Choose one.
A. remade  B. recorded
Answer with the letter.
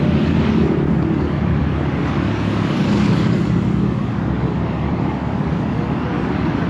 A